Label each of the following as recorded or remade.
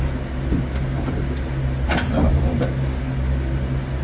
recorded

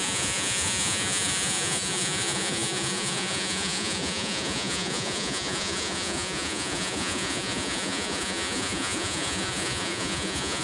remade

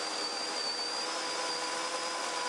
recorded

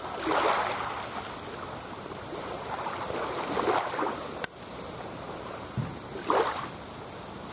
recorded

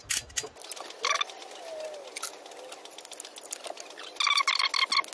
recorded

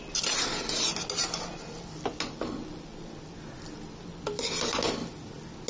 recorded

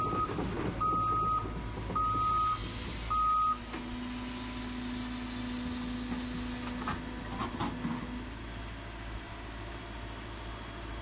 recorded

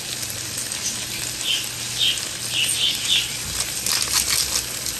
recorded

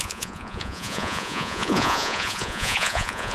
remade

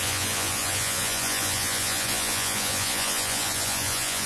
remade